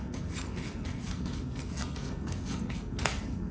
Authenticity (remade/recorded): remade